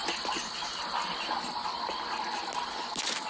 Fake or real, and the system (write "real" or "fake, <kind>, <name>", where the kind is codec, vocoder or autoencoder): real